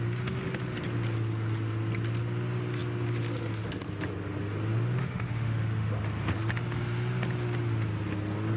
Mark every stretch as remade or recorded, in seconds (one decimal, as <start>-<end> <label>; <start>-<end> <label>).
0.0-5.0 recorded; 5.0-5.9 remade; 5.9-8.6 recorded